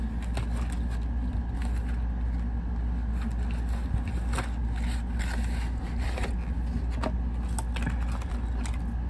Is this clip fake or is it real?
real